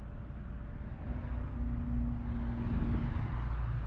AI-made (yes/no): no